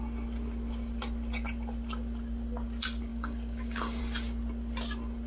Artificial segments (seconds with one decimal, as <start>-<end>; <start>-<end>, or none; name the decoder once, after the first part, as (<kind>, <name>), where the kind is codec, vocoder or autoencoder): 3.1-4.0 (codec, DAC)